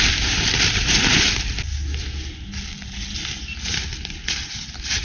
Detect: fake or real real